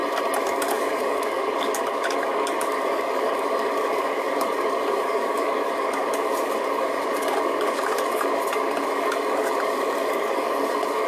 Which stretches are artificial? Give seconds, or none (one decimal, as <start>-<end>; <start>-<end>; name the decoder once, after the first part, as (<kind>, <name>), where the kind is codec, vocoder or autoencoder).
0.5-11.1 (codec, DAC)